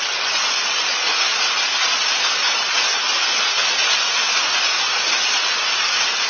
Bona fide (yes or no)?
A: yes